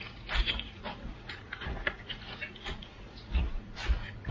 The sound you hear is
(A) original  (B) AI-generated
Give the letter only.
B